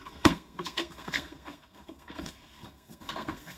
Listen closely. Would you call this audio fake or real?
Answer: fake